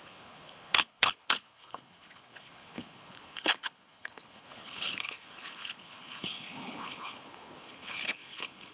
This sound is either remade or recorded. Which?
remade